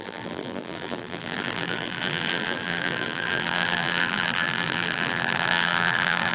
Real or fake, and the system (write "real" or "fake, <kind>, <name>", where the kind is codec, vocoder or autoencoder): fake, vocoder, BigVGAN v2